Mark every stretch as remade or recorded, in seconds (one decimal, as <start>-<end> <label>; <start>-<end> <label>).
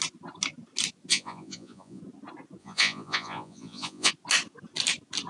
0.0-1.1 recorded; 1.1-2.0 remade; 2.0-2.6 recorded; 2.6-4.1 remade; 4.1-5.3 recorded